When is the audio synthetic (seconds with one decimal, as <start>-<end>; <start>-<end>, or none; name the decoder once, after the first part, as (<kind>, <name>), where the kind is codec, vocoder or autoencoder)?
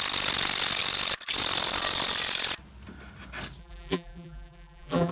3.6-5.1 (vocoder, BigVGAN v2)